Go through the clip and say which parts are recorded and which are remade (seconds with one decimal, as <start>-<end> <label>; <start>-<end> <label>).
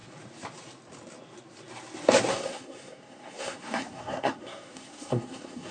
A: 0.0-2.3 recorded; 2.3-5.7 remade